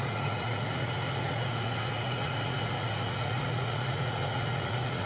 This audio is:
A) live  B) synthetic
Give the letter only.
B